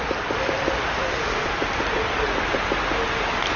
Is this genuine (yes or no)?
yes